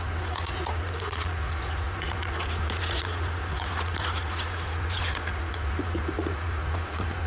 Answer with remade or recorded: remade